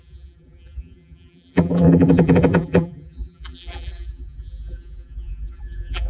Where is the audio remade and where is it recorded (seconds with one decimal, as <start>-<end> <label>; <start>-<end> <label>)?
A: 0.0-6.1 remade